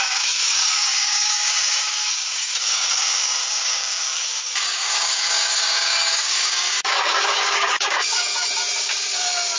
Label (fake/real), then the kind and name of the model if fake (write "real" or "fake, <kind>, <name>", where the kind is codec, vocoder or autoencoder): fake, codec, DAC